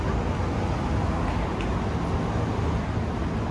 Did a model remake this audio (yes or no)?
no